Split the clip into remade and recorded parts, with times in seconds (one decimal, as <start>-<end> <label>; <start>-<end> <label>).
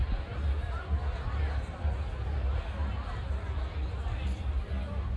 0.0-5.2 recorded